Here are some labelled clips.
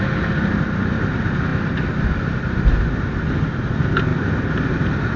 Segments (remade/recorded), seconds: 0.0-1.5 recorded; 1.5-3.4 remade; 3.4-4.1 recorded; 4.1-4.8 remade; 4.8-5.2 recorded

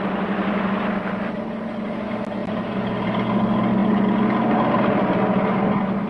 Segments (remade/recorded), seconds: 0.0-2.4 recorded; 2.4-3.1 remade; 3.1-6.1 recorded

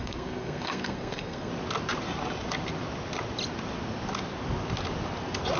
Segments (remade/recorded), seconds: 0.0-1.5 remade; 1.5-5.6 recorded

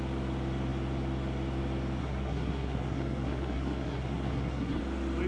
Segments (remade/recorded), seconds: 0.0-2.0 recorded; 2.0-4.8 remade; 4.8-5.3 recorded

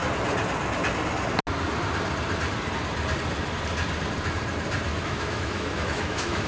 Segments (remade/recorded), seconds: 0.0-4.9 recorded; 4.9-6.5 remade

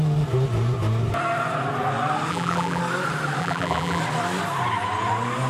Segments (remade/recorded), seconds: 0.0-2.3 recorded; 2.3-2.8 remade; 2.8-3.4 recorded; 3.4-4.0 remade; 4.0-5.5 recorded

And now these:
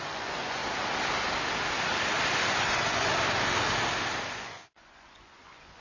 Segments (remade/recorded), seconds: 0.0-0.6 remade; 0.6-2.5 recorded; 2.5-3.1 remade; 3.1-4.3 recorded; 4.3-5.8 remade